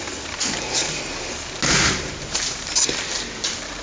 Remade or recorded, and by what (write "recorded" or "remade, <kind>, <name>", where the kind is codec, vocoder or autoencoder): recorded